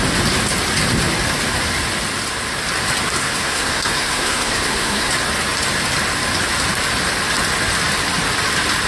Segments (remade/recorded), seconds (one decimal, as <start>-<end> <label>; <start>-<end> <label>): 0.0-3.2 recorded; 3.2-5.1 remade; 5.1-8.9 recorded